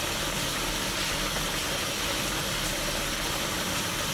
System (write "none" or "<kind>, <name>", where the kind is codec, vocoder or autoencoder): none